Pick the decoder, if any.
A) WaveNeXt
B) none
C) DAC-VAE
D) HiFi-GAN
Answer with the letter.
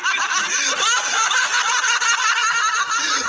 B